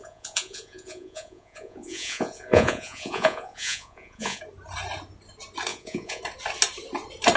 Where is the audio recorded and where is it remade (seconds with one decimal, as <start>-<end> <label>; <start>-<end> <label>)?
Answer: 0.0-4.4 remade; 4.4-5.7 recorded; 5.7-6.2 remade; 6.2-7.4 recorded